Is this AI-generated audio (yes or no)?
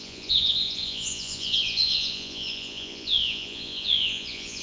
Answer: yes